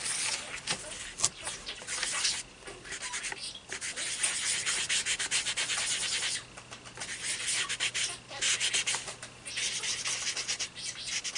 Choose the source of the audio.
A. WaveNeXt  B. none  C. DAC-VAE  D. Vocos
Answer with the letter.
B